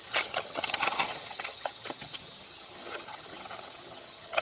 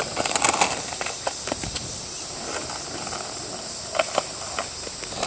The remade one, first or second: first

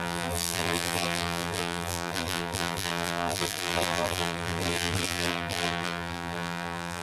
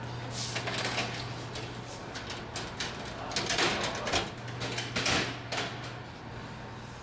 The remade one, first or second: first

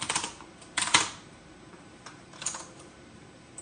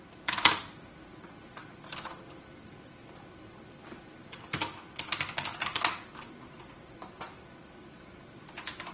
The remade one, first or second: first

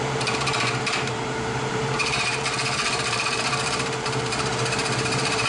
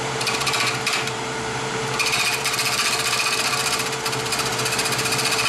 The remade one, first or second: first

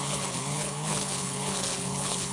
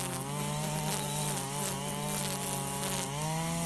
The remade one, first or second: first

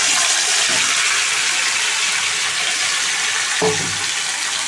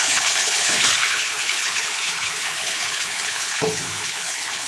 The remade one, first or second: second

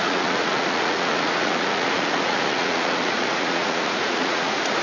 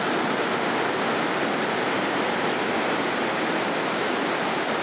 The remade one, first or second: first